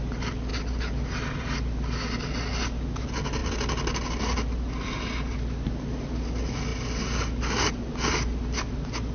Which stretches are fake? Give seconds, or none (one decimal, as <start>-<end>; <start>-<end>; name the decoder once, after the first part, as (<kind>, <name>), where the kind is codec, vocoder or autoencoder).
none